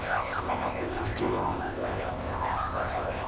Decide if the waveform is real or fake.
fake